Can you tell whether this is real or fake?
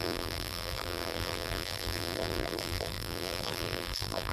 fake